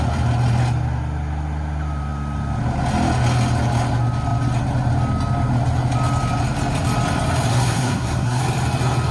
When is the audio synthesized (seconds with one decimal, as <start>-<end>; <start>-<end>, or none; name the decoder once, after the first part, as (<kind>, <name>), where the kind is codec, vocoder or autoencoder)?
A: 7.5-8.4 (codec, SNAC)